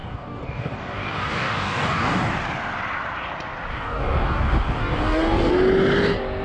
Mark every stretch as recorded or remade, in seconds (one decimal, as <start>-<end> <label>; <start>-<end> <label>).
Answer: 0.0-2.3 remade; 2.3-3.7 recorded; 3.7-5.5 remade; 5.5-6.4 recorded